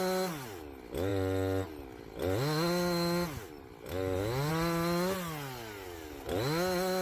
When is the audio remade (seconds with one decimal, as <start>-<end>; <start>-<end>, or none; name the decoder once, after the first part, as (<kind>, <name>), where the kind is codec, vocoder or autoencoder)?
none